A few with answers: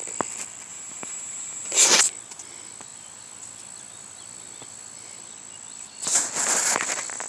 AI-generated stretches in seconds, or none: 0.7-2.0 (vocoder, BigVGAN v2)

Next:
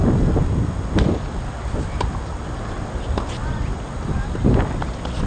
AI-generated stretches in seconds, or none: none

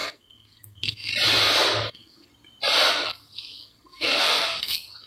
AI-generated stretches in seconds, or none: 0.0-1.1 (codec, SNAC); 1.9-2.3; 2.9-5.1